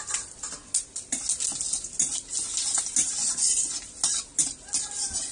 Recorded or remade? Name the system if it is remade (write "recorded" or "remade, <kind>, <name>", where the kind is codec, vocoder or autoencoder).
recorded